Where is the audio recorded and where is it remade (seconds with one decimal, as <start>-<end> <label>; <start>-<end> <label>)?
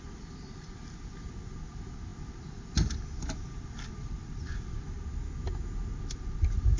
0.0-6.8 recorded